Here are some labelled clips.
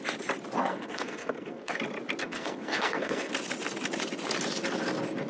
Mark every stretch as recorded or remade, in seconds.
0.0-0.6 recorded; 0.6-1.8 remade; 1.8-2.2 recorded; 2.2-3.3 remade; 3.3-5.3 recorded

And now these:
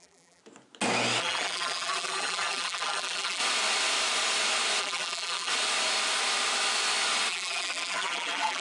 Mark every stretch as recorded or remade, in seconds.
0.0-0.4 remade; 0.4-1.2 recorded; 1.2-3.4 remade; 3.4-4.8 recorded; 4.8-5.5 remade; 5.5-7.3 recorded; 7.3-8.6 remade

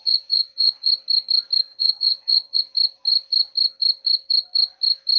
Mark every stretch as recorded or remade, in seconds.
0.0-0.9 remade; 0.9-1.7 recorded; 1.7-2.6 remade; 2.6-5.2 recorded

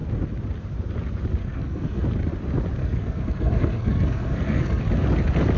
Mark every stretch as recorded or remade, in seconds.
0.0-1.4 recorded; 1.4-2.0 remade; 2.0-2.8 recorded; 2.8-4.8 remade; 4.8-5.6 recorded

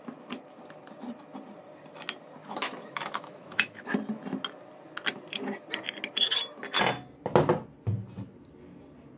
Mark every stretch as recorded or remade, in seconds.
0.0-2.4 recorded; 2.4-3.9 remade; 3.9-9.2 recorded

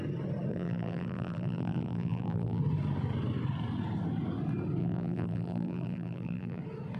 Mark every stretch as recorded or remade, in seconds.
0.0-0.5 recorded; 0.5-2.6 remade; 2.6-4.8 recorded; 4.8-6.6 remade; 6.6-7.0 recorded

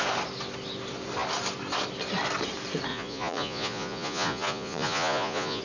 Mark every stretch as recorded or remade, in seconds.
0.0-2.9 recorded; 2.9-5.6 remade